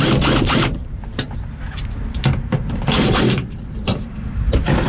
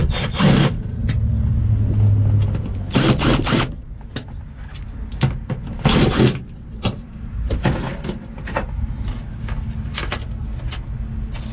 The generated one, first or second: first